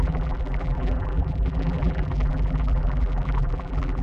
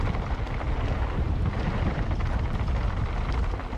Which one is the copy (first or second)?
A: first